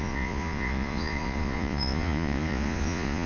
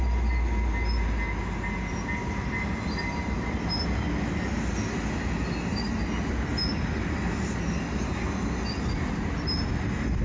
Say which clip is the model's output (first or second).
first